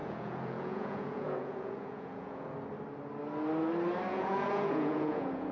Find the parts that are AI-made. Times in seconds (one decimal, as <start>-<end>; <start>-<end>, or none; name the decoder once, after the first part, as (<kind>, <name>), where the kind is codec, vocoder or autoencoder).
0.0-2.5 (vocoder, Vocos); 4.1-5.5